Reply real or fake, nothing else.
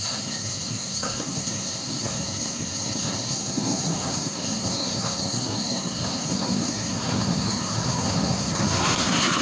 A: fake